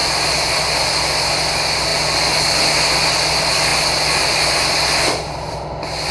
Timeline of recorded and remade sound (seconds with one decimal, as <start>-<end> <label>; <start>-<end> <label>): 0.0-6.1 recorded